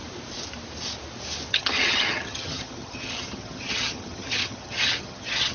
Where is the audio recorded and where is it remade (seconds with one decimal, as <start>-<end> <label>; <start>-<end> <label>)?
0.0-1.5 recorded; 1.5-5.5 remade